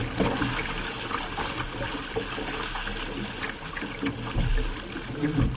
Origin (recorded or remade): recorded